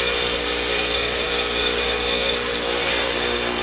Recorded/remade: remade